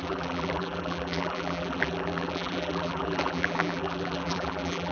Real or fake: fake